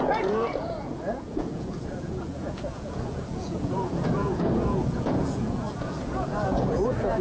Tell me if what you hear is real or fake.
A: fake